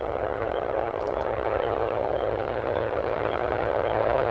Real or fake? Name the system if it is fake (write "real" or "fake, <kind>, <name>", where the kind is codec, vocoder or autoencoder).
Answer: fake, vocoder, HiFi-GAN